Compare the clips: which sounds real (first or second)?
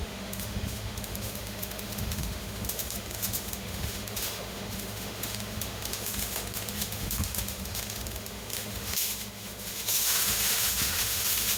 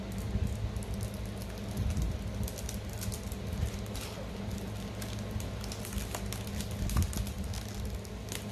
second